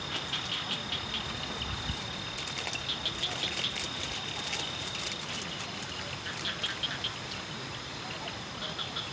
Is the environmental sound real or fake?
real